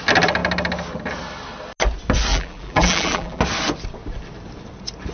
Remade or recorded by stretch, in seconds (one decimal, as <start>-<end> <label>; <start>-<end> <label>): 0.0-2.3 recorded; 2.3-3.4 remade; 3.4-5.1 recorded